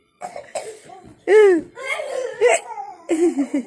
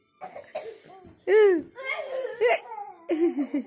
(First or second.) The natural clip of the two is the second